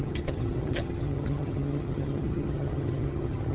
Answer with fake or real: fake